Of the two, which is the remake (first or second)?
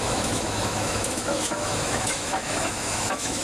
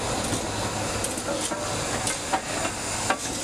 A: first